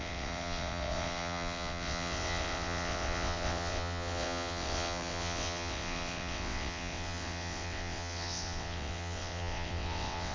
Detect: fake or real fake